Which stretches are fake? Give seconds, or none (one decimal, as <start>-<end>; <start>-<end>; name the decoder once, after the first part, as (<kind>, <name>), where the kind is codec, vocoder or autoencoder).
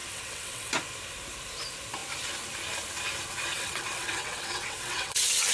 0.0-0.7 (vocoder, WaveNeXt); 3.5-5.5